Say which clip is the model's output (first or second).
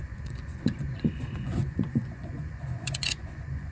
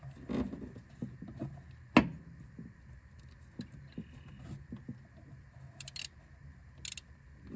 first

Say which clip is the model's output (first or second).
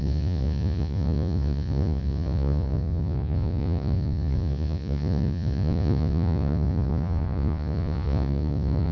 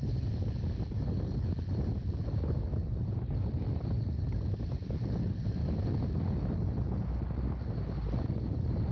first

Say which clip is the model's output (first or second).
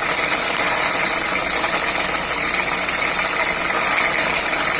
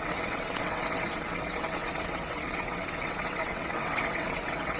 second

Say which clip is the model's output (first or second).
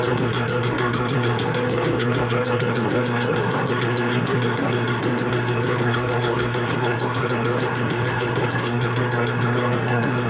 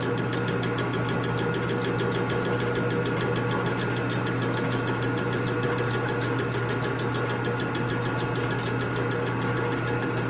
first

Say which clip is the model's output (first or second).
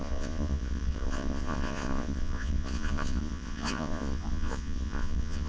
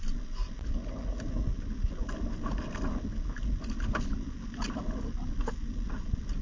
first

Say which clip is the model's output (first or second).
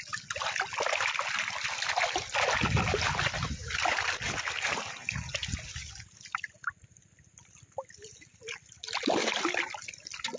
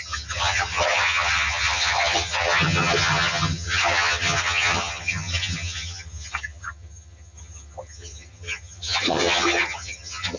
second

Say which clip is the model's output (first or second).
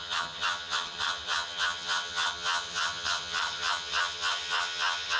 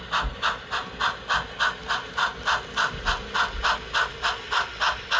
first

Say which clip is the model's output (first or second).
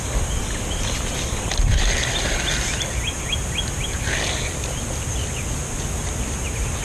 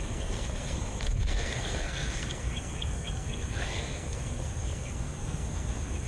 second